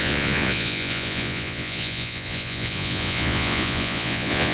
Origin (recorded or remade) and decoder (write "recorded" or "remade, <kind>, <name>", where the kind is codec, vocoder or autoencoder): remade, vocoder, Vocos